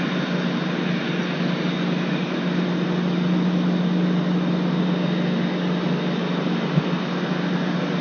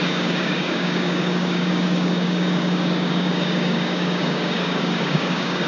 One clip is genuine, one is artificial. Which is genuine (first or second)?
first